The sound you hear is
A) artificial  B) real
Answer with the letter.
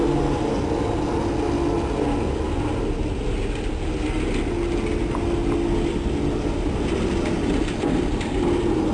B